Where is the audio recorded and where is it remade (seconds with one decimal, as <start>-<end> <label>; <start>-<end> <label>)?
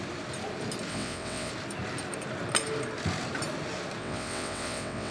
0.0-0.9 recorded; 0.9-1.5 remade; 1.5-4.0 recorded; 4.0-5.1 remade